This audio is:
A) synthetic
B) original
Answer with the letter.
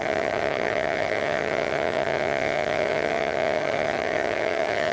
A